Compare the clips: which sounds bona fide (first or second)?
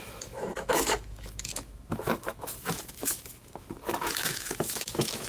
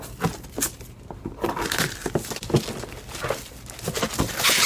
second